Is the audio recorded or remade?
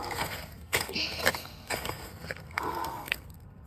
remade